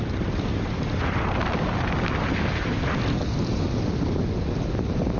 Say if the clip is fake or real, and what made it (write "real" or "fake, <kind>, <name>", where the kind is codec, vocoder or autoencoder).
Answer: real